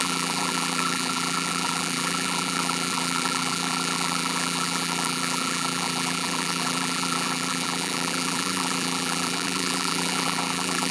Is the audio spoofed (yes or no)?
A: yes